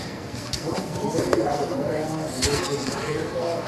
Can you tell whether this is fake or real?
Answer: fake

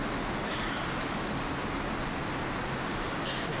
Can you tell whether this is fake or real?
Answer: real